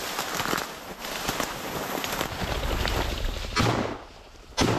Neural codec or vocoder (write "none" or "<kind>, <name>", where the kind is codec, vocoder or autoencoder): none